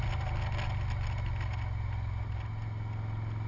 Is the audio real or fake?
real